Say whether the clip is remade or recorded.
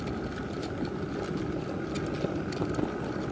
recorded